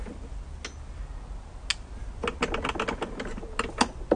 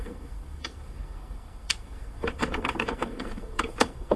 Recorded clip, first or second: first